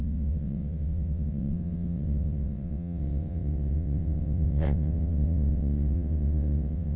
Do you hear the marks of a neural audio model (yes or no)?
yes